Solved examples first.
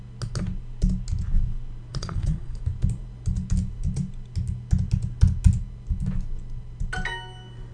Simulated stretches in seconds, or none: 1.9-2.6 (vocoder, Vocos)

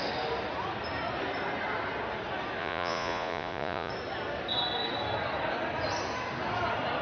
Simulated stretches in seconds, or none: 2.6-3.9 (vocoder, Vocos)

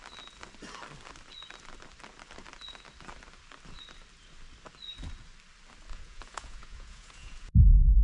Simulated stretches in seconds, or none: 5.9-8.0 (vocoder, Vocos)

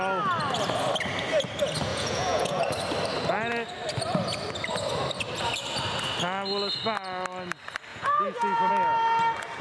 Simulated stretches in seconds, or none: 1.9-2.6 (vocoder, Vocos); 7.9-8.7